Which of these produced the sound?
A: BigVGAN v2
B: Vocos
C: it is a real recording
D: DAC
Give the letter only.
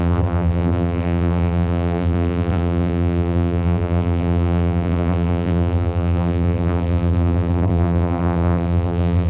A